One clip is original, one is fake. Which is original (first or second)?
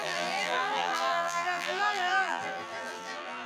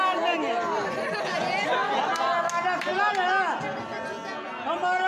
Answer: second